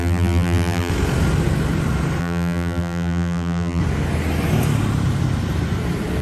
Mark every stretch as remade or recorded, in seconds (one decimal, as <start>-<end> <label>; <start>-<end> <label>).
0.0-0.9 remade; 0.9-2.2 recorded; 2.2-3.8 remade; 3.8-6.2 recorded

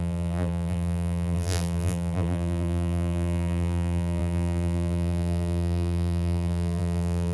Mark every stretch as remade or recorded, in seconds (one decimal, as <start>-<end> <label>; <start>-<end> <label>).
0.0-7.3 remade

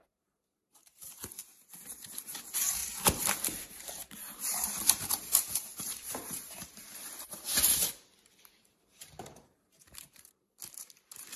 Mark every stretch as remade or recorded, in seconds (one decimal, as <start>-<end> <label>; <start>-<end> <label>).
0.0-1.4 remade; 1.4-2.2 recorded; 2.2-2.8 remade; 2.8-4.0 recorded; 4.0-7.5 remade; 7.5-8.4 recorded; 8.4-11.4 remade

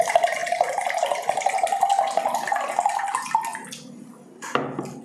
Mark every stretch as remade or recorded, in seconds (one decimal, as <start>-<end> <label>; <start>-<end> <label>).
0.0-5.0 recorded

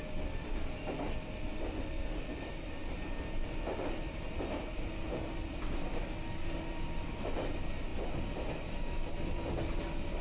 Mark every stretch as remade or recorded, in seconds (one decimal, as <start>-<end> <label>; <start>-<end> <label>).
0.0-10.2 remade